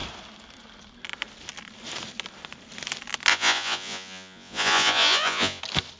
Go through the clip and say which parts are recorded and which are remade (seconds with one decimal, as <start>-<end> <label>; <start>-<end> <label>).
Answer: 0.0-3.3 recorded; 3.3-5.6 remade; 5.6-6.0 recorded